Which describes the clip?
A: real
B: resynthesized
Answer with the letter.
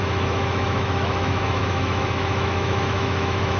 B